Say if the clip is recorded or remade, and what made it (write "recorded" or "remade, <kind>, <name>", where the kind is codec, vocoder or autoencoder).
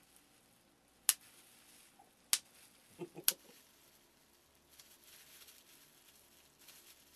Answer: recorded